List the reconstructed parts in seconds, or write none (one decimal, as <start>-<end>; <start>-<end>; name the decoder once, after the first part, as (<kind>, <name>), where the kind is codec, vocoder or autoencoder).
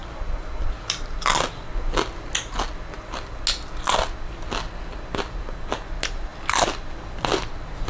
none